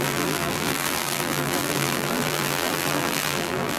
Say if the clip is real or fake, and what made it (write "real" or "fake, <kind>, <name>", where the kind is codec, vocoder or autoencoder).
fake, vocoder, BigVGAN v2